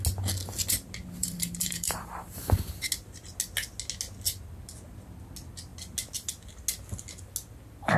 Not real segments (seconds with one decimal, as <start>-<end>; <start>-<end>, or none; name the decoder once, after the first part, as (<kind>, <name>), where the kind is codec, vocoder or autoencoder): 1.2-2.9 (vocoder, BigVGAN v2)